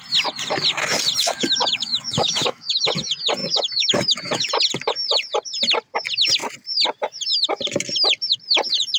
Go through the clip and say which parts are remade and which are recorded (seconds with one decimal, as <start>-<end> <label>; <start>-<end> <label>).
0.0-1.2 recorded; 1.2-2.9 remade; 2.9-3.4 recorded; 3.4-4.5 remade; 4.5-9.0 recorded